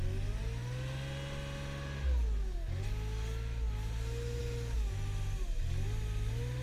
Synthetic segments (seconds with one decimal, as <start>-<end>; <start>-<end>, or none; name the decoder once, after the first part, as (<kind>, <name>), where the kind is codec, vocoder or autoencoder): none